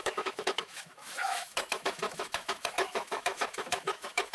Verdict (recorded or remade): remade